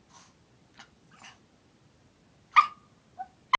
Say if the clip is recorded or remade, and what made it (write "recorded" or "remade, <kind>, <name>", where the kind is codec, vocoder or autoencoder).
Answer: recorded